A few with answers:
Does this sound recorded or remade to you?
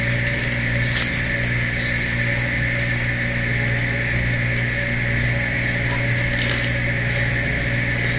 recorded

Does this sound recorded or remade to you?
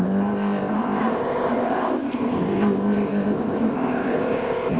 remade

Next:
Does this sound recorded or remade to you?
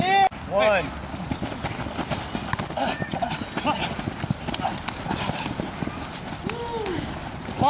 recorded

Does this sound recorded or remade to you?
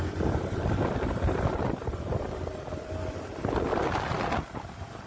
recorded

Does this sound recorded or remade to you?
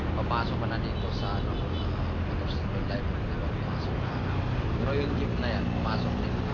recorded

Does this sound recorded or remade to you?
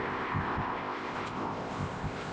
remade